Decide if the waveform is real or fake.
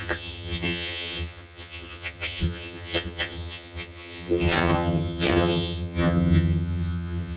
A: fake